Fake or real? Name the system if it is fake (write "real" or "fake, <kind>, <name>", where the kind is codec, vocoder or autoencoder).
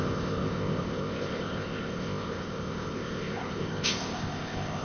fake, codec, ZipCodec